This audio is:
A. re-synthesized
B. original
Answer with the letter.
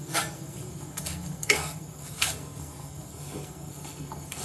A